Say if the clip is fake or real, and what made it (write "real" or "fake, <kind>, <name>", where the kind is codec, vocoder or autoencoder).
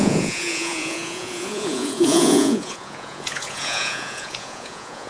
fake, vocoder, Vocos